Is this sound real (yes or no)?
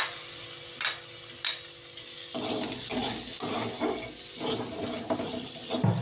yes